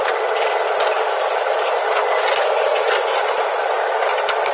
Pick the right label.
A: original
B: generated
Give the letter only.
A